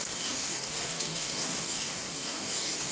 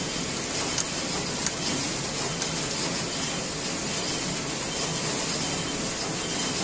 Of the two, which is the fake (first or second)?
first